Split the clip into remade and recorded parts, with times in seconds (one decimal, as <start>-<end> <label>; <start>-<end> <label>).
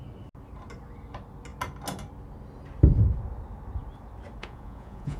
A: 0.0-4.4 recorded; 4.4-5.2 remade